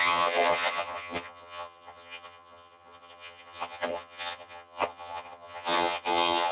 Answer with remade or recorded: remade